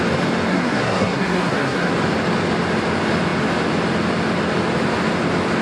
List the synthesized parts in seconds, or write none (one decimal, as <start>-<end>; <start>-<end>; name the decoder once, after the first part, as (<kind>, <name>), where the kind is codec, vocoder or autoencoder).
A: 0.5-1.9 (codec, SNAC)